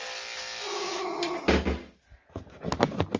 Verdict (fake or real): real